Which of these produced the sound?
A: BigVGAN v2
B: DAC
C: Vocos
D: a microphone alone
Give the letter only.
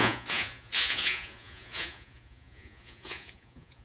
C